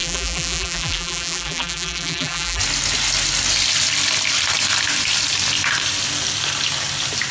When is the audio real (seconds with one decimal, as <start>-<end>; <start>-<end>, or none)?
2.6-7.3